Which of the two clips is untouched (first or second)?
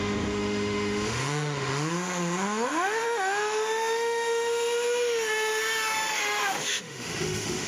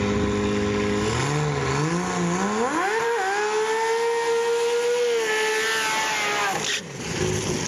second